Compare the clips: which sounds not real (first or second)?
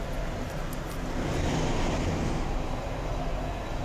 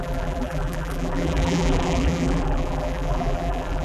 second